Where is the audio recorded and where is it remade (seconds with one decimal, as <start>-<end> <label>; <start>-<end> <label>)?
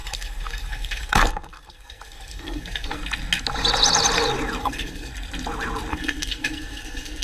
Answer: 0.0-3.0 remade; 3.0-4.6 recorded; 4.6-5.1 remade; 5.1-5.9 recorded; 5.9-7.2 remade